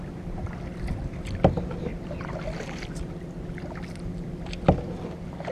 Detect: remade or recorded recorded